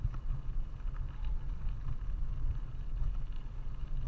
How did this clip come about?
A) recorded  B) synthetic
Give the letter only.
A